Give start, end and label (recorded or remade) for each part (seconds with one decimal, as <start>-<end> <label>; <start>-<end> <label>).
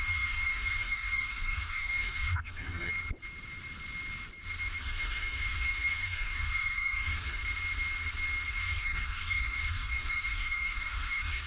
0.0-2.9 remade; 2.9-4.8 recorded; 4.8-7.4 remade; 7.4-8.5 recorded; 8.5-11.5 remade